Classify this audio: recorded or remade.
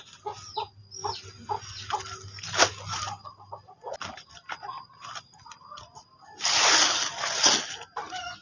recorded